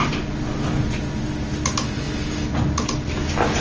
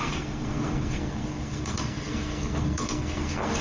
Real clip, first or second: first